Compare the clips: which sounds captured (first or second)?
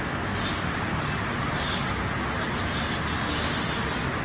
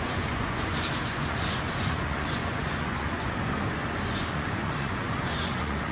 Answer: first